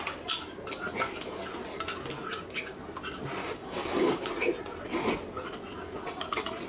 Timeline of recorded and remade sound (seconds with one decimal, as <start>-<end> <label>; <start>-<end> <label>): 0.0-2.3 recorded; 2.3-2.8 remade; 2.8-3.4 recorded; 3.4-4.3 remade; 4.3-6.7 recorded